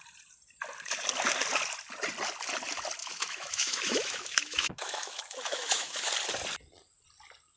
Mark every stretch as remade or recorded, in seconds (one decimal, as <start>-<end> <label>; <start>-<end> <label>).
0.0-3.0 recorded; 3.0-6.1 remade; 6.1-7.6 recorded

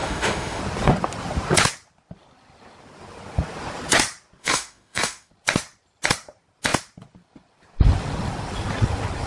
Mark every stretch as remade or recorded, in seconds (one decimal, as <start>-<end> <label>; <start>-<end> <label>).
0.0-0.6 remade; 0.6-4.4 recorded; 4.4-5.3 remade; 5.3-9.3 recorded

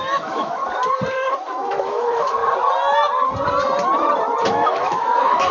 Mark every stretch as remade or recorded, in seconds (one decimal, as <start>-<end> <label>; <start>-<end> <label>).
0.0-0.6 remade; 0.6-1.5 recorded; 1.5-2.4 remade; 2.4-4.5 recorded; 4.5-5.5 remade

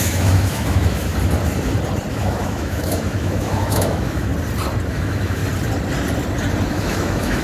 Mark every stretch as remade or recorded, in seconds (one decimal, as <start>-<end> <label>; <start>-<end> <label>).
0.0-1.1 remade; 1.1-2.1 recorded; 2.1-4.3 remade; 4.3-4.9 recorded; 4.9-5.4 remade; 5.4-6.7 recorded; 6.7-7.4 remade